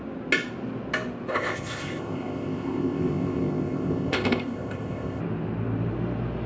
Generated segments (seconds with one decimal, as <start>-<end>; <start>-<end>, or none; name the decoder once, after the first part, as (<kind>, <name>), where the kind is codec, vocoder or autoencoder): 1.3-5.2 (codec, ZipCodec)